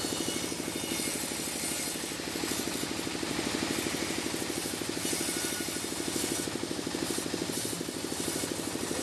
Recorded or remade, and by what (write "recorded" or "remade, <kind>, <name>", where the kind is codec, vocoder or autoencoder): recorded